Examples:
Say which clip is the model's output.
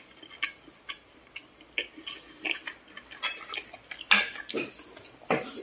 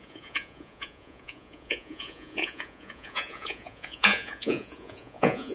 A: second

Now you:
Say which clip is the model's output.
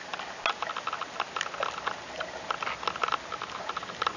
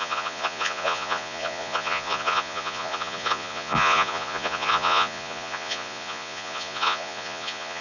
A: second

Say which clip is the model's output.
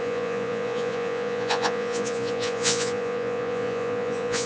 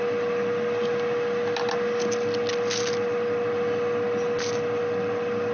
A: first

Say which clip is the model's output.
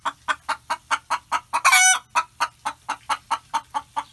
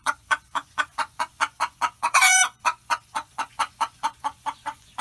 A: second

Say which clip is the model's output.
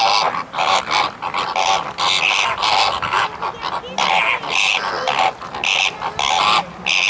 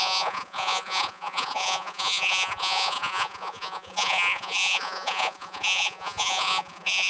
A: second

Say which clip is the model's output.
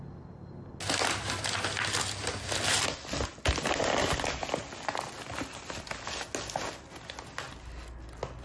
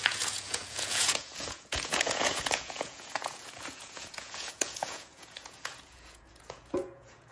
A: second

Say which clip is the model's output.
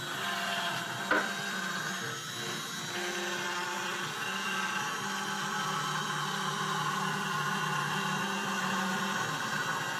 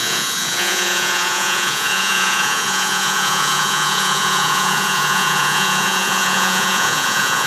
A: second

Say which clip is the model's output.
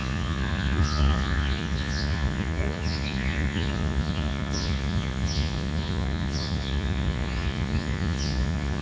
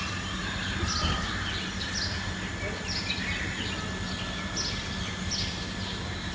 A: first